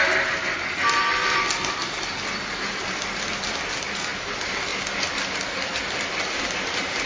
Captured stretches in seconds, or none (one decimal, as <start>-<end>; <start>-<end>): 0.0-7.1